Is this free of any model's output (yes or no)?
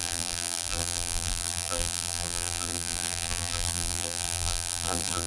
no